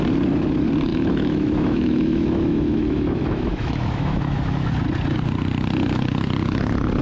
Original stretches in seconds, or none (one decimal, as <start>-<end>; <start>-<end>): 0.0-0.9; 4.7-7.0